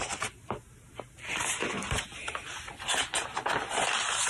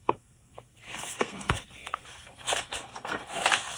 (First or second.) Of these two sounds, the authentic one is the first